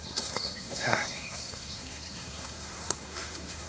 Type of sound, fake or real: fake